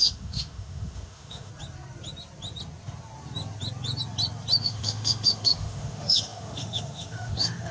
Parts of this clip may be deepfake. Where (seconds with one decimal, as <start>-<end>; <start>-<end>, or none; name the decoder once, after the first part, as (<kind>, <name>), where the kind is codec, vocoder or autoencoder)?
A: 0.0-1.5 (autoencoder, DAC-VAE); 4.6-7.7